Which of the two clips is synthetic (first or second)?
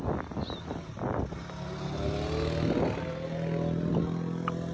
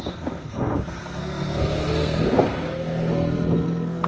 second